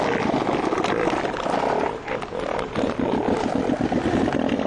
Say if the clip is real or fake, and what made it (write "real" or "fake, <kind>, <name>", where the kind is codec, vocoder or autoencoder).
real